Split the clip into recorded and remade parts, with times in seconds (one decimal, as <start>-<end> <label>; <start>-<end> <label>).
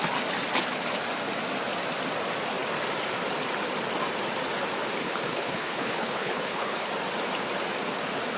0.0-5.0 recorded; 5.0-6.9 remade; 6.9-8.4 recorded